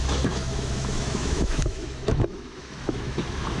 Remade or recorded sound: remade